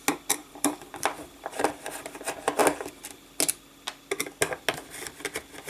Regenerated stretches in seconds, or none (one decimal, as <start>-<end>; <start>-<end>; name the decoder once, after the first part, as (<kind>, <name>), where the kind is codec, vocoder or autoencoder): 0.4-2.1 (vocoder, BigVGAN v2)